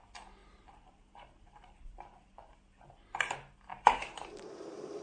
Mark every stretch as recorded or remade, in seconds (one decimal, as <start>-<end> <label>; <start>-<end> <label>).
0.0-0.4 recorded; 0.4-2.3 remade; 2.3-3.7 recorded; 3.7-5.0 remade